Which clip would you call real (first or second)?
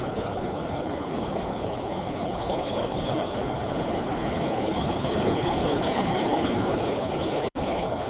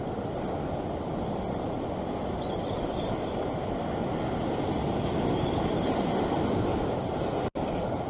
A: second